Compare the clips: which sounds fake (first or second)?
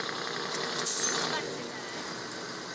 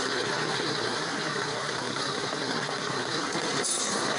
second